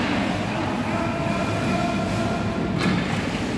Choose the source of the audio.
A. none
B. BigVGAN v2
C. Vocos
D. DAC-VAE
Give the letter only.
A